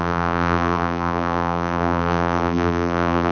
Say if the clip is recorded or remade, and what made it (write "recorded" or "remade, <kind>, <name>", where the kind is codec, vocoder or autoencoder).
remade, vocoder, BigVGAN v2